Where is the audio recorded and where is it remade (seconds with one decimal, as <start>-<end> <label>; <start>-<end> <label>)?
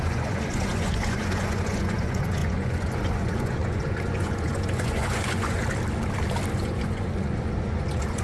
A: 0.0-5.6 remade; 5.6-6.5 recorded; 6.5-8.2 remade